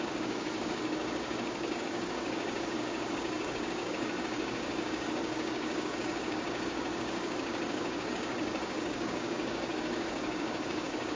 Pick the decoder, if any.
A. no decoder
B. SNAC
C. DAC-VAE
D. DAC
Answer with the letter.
D